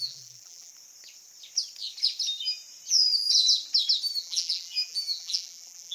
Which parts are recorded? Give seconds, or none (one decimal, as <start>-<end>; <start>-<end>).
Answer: 0.7-4.2

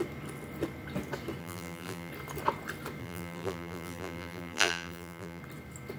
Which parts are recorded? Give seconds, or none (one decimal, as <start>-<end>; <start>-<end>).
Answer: 0.0-1.4; 2.1-3.0; 5.4-6.0